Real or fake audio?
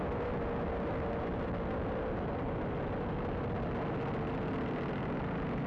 real